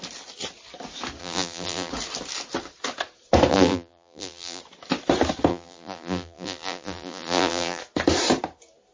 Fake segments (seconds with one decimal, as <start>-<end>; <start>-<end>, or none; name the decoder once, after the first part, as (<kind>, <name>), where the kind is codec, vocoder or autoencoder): 1.2-1.9 (vocoder, BigVGAN v2); 3.5-4.6; 5.5-7.8